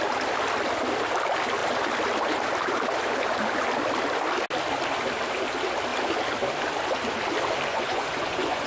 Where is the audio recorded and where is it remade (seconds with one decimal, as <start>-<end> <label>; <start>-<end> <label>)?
0.0-7.7 recorded; 7.7-8.7 remade